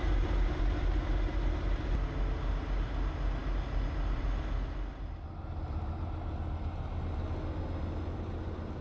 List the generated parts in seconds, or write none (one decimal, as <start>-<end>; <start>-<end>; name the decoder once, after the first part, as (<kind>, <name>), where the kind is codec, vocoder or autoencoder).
none